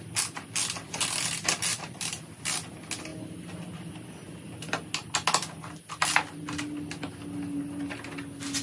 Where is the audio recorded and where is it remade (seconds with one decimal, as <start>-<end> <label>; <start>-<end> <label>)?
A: 0.0-1.7 recorded; 1.7-2.2 remade; 2.2-8.6 recorded